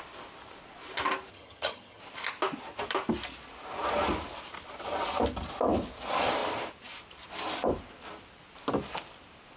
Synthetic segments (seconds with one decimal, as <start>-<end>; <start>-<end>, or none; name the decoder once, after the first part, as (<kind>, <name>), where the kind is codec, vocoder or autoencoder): 1.3-2.0 (vocoder, HiFi-GAN)